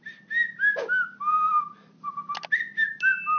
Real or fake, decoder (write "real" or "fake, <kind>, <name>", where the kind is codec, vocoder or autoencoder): real